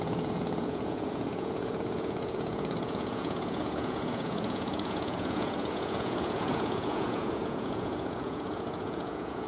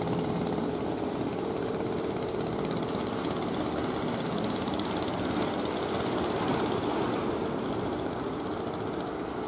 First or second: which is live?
second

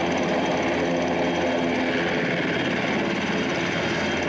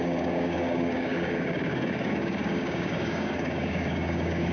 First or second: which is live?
first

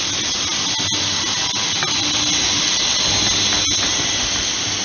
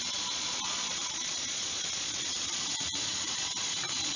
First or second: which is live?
first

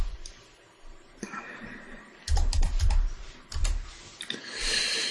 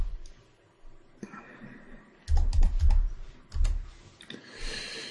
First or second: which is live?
second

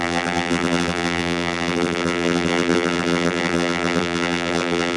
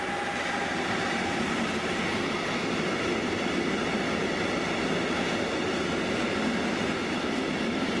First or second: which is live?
second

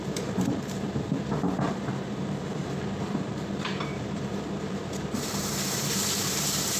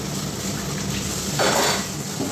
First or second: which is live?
second